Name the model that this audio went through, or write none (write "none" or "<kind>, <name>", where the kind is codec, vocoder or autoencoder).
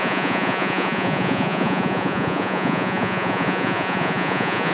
vocoder, Vocos